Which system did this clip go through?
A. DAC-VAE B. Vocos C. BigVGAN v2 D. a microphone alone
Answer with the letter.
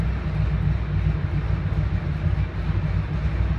D